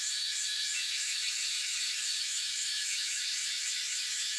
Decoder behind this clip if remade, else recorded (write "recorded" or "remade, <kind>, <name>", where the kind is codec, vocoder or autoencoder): remade, autoencoder, DAC-VAE